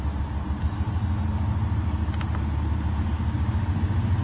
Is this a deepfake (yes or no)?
no